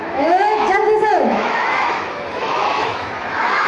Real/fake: fake